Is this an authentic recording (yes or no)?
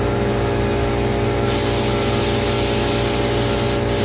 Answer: yes